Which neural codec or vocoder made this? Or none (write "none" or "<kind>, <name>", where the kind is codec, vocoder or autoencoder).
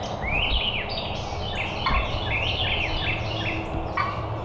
none